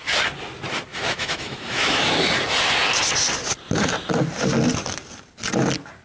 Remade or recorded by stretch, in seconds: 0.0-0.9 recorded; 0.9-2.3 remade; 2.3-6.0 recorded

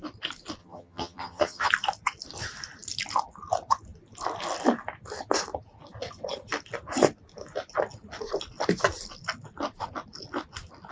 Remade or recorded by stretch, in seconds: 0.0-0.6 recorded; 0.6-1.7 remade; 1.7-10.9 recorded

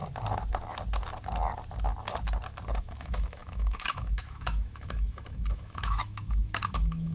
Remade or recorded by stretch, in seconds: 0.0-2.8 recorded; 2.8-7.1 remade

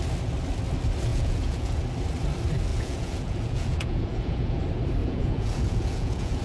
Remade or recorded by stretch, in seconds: 0.0-1.1 recorded; 1.1-1.8 remade; 1.8-2.7 recorded; 2.7-4.6 remade; 4.6-5.0 recorded; 5.0-6.4 remade

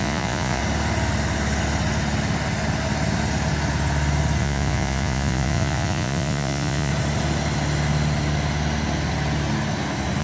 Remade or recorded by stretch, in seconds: 0.0-0.6 remade; 0.6-4.4 recorded; 4.4-6.9 remade; 6.9-10.2 recorded

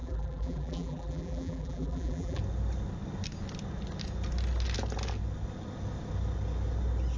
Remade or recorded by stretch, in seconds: 0.0-2.4 remade; 2.4-7.2 recorded

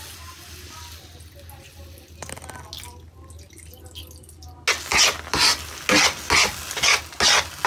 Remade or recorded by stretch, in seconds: 0.0-7.7 recorded

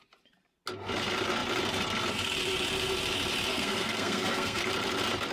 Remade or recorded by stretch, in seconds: 0.0-3.5 recorded; 3.5-4.6 remade; 4.6-5.3 recorded